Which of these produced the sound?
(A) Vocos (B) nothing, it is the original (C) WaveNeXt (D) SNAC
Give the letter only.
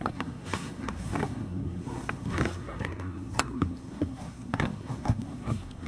D